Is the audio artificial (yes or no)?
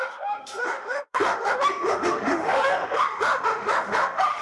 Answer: yes